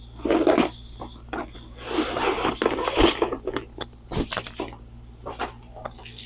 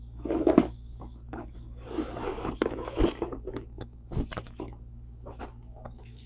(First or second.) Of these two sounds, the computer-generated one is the second